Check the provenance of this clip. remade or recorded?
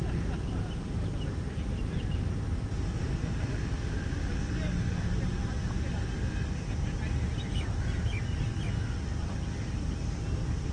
recorded